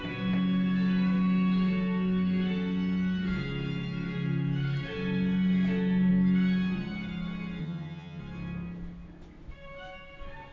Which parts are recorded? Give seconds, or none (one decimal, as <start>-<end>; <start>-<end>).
0.0-7.6; 8.2-10.5